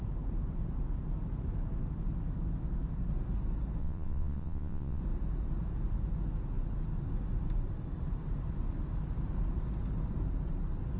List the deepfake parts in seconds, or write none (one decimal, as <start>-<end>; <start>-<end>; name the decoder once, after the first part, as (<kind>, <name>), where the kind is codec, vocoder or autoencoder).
3.8-5.0 (vocoder, Vocos)